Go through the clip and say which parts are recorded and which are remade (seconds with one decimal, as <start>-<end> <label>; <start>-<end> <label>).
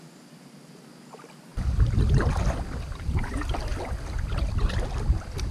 0.0-5.5 recorded